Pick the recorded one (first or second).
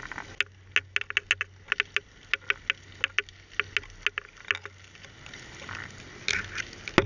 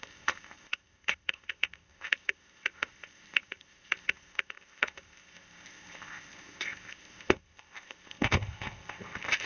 first